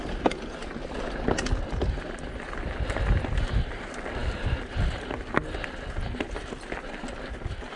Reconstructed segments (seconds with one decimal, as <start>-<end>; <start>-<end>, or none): none